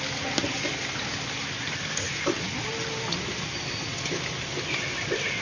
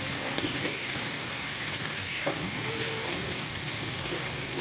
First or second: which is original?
first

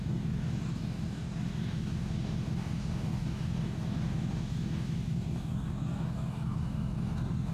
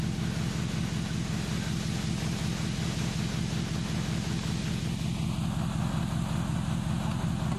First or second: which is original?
second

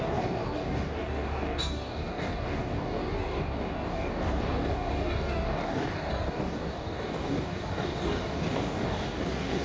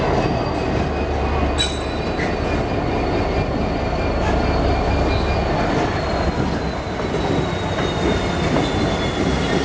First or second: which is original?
second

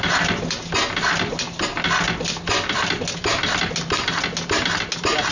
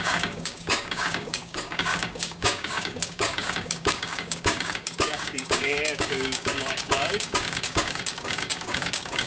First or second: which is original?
first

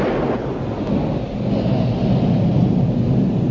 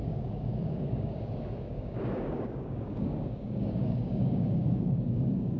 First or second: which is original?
first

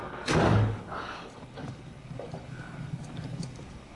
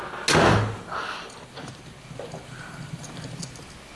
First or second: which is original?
second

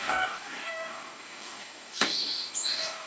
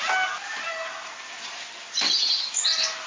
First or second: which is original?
second